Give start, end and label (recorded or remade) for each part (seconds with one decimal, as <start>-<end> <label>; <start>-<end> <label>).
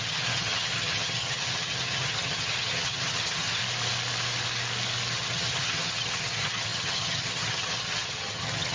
0.0-3.6 remade; 3.6-5.1 recorded; 5.1-8.7 remade